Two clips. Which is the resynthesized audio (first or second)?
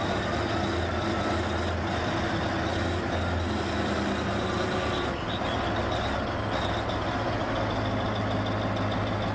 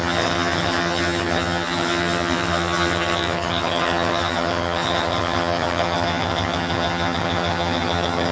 second